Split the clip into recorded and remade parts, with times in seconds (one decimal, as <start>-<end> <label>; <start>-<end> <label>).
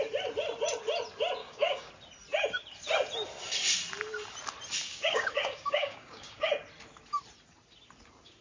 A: 0.0-1.4 recorded; 1.4-1.9 remade; 1.9-4.9 recorded; 4.9-6.5 remade; 6.5-8.4 recorded